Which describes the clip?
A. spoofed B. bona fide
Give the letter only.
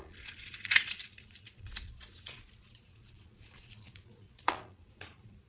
A